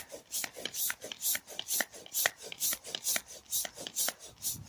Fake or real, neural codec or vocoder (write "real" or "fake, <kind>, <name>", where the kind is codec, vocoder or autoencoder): real